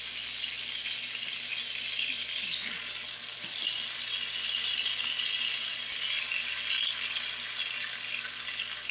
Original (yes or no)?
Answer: yes